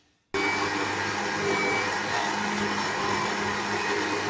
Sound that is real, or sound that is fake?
real